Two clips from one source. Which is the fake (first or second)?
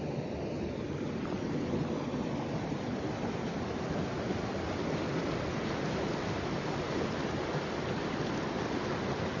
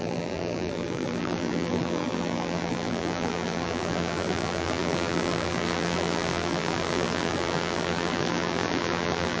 second